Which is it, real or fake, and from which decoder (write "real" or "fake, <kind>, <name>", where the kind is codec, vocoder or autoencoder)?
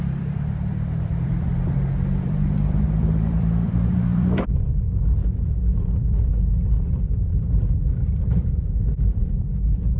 fake, vocoder, BigVGAN v2